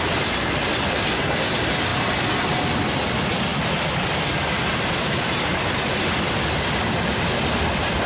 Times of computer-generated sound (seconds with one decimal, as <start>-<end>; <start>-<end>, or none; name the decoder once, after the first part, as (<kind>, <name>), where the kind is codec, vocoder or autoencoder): none